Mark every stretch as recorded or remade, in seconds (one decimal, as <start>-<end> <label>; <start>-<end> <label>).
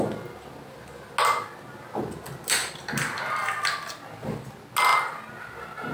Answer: 0.0-2.6 recorded; 2.6-3.7 remade; 3.7-5.9 recorded